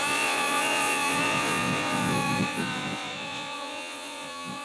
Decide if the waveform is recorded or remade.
remade